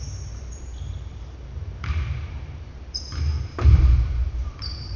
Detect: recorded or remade remade